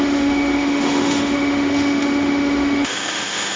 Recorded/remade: remade